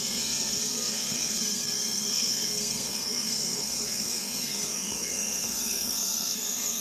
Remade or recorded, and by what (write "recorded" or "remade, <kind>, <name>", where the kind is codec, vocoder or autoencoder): remade, codec, SNAC